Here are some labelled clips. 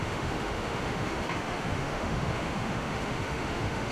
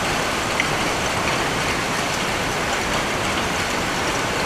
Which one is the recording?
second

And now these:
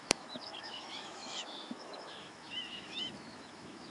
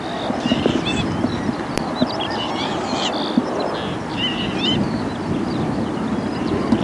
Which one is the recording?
second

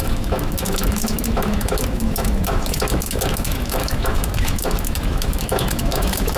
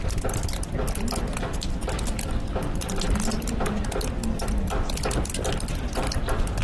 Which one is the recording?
second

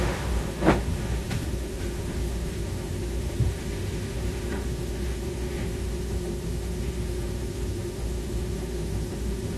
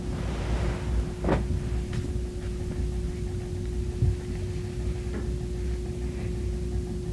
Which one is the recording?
second